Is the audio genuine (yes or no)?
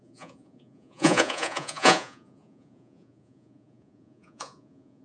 no